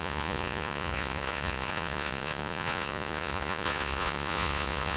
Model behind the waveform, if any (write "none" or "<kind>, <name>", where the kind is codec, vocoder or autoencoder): vocoder, Vocos